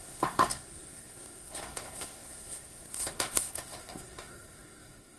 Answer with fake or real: fake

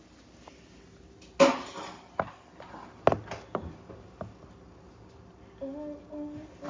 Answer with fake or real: real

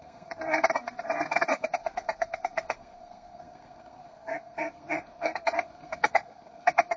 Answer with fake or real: fake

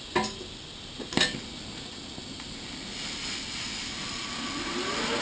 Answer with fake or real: real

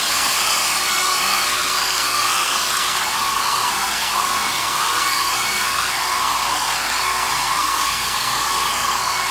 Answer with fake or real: fake